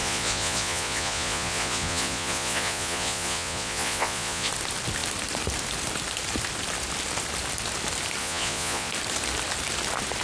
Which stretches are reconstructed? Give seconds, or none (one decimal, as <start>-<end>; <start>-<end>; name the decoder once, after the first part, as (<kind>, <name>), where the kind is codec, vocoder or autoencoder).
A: 0.0-4.5 (vocoder, Vocos); 8.2-8.9